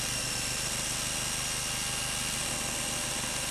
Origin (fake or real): real